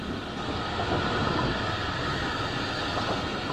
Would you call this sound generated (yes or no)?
no